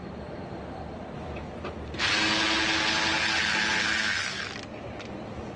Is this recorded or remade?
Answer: recorded